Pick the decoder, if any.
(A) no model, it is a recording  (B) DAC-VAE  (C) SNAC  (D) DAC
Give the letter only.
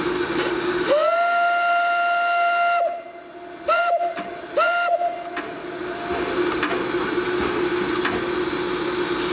A